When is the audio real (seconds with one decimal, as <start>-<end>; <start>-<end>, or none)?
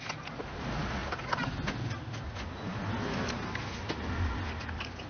0.0-5.1